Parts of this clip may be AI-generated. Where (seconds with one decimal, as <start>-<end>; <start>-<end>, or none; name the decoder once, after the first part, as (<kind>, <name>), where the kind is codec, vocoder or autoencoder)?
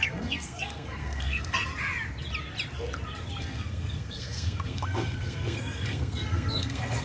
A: 0.0-1.7 (codec, SNAC); 3.4-7.0